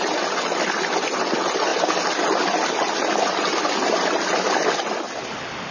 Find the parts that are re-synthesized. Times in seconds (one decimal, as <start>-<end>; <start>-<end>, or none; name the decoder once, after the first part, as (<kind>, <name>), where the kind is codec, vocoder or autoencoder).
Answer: none